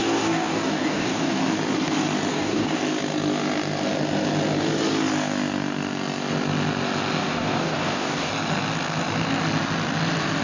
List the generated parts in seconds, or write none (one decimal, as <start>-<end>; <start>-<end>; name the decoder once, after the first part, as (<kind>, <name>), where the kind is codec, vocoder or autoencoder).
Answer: 0.0-1.4 (codec, DAC); 2.3-2.8; 7.2-8.3